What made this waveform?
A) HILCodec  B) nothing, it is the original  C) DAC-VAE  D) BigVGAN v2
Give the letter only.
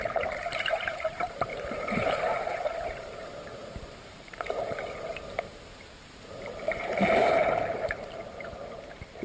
D